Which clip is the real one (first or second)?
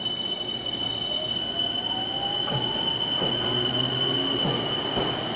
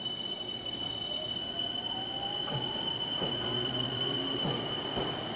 first